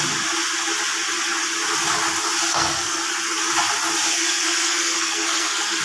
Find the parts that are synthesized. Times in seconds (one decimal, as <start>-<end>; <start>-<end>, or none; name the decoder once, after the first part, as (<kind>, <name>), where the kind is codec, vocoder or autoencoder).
2.5-3.1 (codec, SNAC); 4.1-5.8